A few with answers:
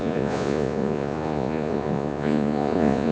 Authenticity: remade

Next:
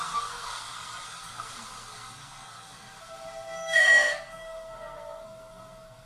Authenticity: remade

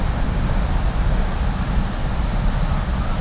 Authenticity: recorded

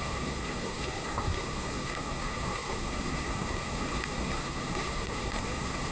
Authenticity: remade